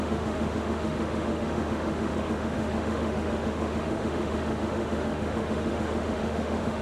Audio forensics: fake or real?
fake